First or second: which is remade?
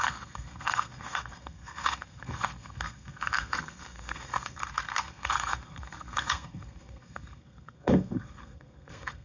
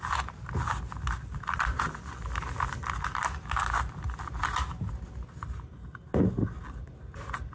first